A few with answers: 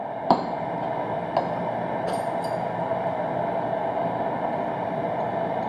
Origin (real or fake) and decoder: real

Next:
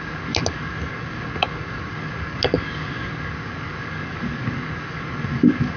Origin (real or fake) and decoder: fake, codec, DAC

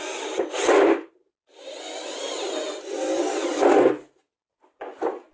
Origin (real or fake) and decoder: real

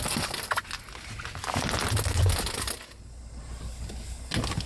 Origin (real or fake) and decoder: real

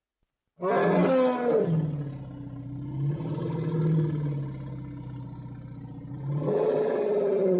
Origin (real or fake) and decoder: real